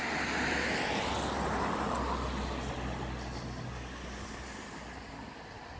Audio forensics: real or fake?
real